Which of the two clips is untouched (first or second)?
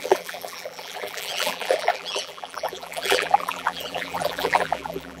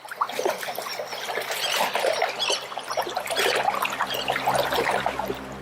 second